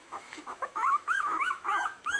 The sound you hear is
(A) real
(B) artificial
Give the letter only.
B